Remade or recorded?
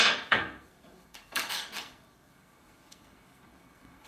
remade